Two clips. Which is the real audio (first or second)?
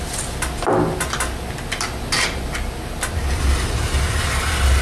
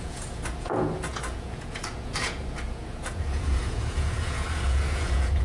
first